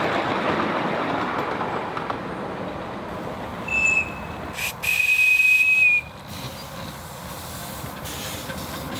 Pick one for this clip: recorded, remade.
recorded